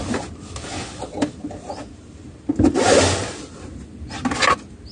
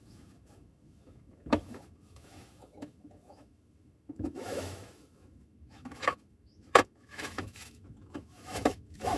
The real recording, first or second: first